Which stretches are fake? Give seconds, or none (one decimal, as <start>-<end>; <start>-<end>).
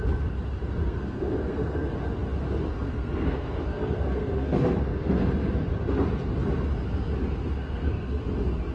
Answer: 0.8-1.9; 2.7-5.3; 7.6-8.2